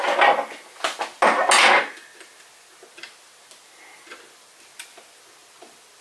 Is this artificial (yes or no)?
no